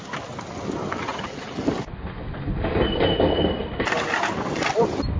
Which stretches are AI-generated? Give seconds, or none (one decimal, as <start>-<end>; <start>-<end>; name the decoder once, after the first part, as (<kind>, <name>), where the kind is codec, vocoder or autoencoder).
1.1-1.6 (vocoder, Vocos)